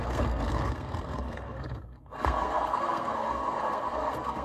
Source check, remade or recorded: remade